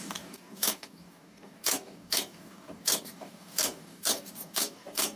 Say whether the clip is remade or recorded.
remade